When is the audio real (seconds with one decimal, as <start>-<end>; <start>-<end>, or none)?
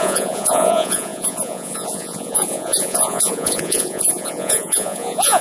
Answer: none